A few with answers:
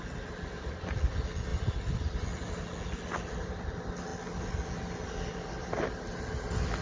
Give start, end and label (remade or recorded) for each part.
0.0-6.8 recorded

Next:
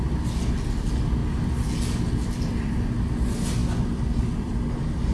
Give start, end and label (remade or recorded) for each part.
0.0-5.1 recorded

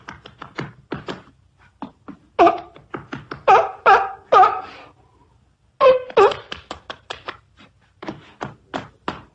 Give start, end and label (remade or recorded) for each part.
0.0-9.3 recorded

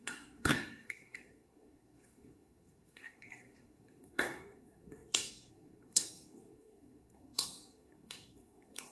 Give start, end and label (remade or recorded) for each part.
0.0-8.9 remade

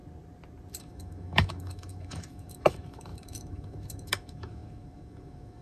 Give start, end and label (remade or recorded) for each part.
0.0-0.8 recorded; 0.8-5.6 remade

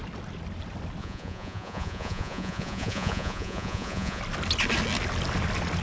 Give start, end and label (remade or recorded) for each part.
0.0-1.0 recorded; 1.0-4.2 remade; 4.2-5.8 recorded

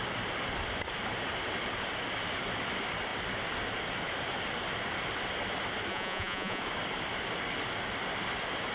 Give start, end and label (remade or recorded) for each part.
0.0-5.9 recorded; 5.9-6.6 remade; 6.6-8.7 recorded